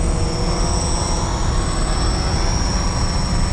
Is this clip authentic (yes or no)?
yes